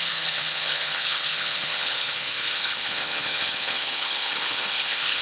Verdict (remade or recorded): remade